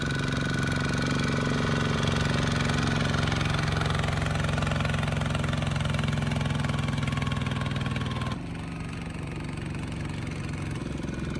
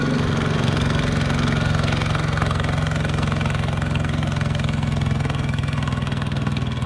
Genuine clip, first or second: first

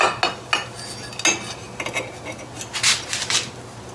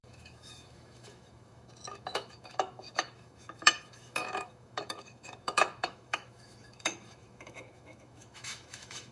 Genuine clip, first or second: first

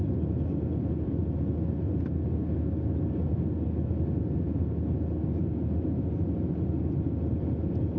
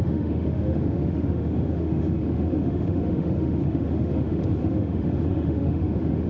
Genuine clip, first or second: first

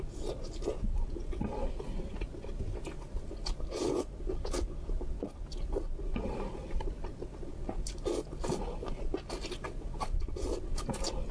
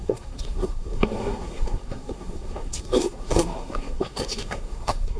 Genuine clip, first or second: first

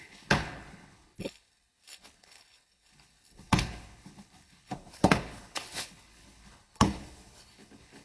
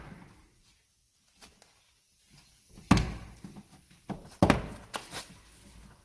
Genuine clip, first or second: second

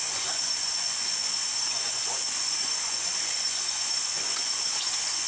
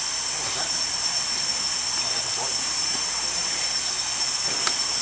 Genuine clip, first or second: second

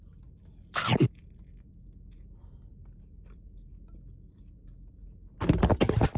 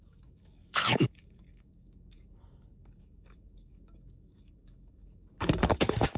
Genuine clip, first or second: first